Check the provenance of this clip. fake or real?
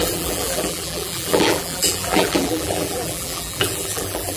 fake